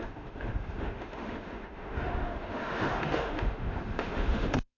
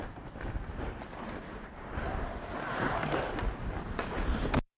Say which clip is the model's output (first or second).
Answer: first